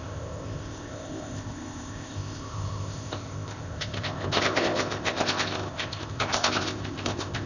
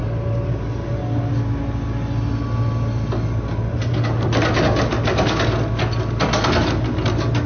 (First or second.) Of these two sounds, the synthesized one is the first